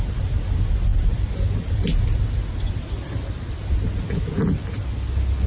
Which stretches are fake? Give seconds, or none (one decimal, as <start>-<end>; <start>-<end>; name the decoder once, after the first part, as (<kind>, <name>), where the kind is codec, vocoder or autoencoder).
none